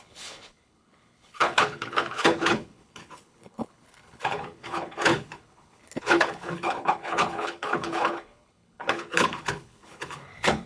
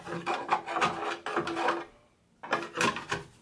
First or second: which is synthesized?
first